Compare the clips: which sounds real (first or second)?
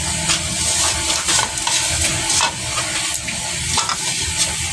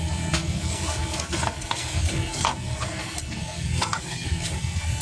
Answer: first